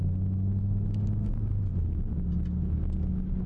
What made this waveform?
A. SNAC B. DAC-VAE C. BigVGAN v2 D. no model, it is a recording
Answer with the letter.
D